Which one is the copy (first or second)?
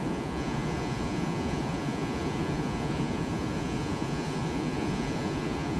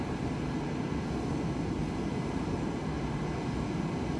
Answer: first